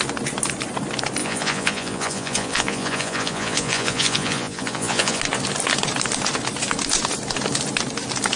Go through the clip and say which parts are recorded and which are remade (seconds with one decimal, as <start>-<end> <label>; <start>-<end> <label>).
0.0-1.2 recorded; 1.2-5.2 remade; 5.2-8.4 recorded